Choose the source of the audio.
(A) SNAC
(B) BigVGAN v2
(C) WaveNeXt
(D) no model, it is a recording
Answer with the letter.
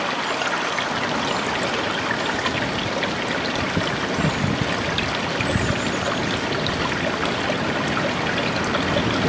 D